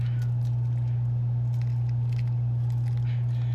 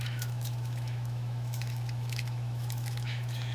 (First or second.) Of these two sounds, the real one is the first